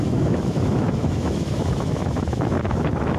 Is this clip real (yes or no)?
no